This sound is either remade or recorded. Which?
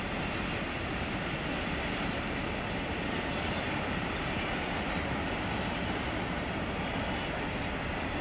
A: recorded